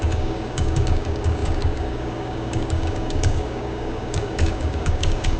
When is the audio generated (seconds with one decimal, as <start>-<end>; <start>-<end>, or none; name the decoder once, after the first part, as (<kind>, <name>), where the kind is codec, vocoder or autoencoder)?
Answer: 0.0-5.4 (codec, DAC)